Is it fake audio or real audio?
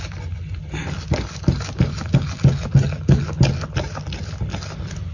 real